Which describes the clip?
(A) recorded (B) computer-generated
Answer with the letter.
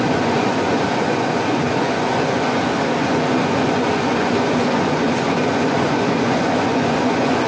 B